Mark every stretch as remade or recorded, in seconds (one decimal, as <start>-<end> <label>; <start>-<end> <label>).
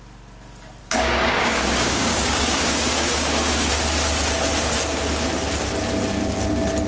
0.0-0.8 recorded; 0.8-3.7 remade; 3.7-6.9 recorded